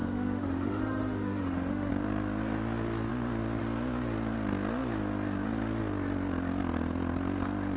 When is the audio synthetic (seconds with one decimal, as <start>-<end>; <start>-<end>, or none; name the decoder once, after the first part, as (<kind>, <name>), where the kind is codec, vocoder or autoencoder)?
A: 0.0-1.9 (autoencoder, DAC-VAE)